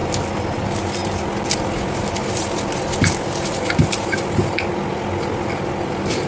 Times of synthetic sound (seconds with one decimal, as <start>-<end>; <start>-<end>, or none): none

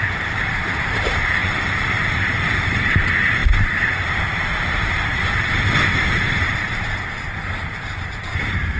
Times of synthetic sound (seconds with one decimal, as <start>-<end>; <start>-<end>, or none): 0.0-3.4; 5.3-8.8